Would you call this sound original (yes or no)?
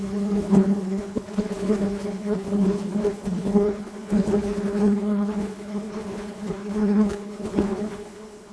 no